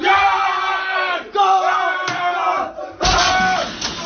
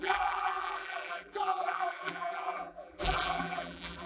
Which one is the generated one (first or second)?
second